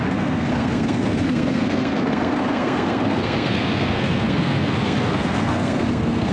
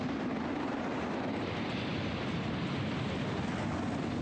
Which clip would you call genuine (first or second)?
second